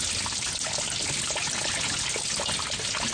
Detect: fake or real real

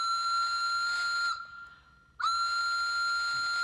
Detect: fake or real real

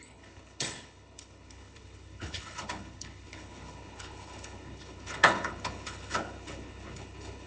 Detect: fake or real fake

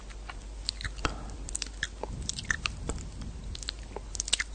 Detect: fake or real real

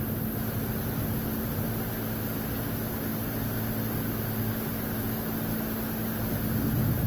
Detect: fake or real real